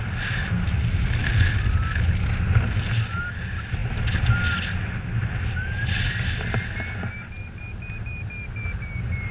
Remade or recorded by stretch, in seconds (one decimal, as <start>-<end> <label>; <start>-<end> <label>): 0.0-9.3 recorded